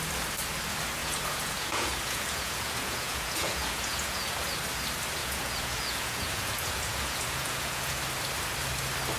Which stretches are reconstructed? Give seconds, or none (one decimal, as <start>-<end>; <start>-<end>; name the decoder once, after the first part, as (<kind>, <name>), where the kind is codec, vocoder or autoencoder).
1.0-4.5 (vocoder, Vocos); 5.2-8.0